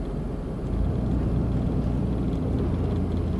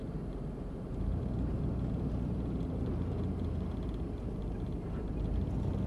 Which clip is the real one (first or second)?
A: first